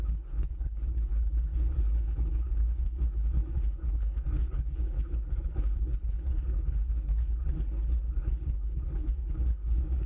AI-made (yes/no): yes